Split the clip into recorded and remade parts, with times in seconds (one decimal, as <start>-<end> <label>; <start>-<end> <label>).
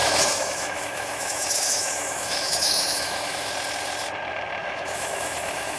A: 0.0-3.5 remade; 3.5-4.6 recorded; 4.6-5.8 remade